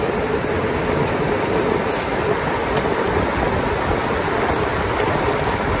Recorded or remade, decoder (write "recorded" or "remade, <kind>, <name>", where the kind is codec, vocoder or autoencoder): recorded